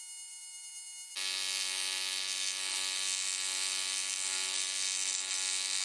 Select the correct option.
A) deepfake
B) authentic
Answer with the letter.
B